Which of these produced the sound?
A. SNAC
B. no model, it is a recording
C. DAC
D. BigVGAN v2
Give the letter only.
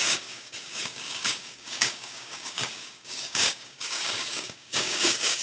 C